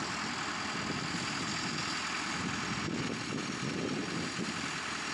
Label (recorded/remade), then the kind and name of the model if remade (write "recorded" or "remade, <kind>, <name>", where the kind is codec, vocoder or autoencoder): recorded